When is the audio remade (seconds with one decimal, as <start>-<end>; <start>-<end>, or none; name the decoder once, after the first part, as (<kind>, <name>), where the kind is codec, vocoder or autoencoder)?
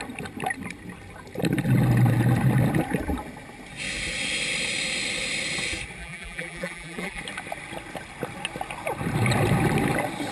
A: 6.0-7.2 (vocoder, BigVGAN v2)